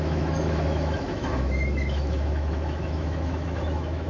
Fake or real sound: fake